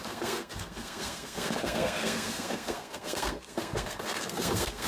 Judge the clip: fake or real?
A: fake